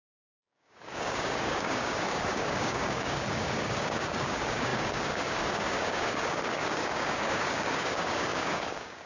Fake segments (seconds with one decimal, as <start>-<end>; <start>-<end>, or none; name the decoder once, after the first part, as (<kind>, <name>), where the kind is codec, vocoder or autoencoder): 0.0-9.1 (codec, DAC)